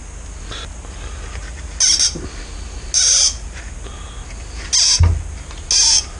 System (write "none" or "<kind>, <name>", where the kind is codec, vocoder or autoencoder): none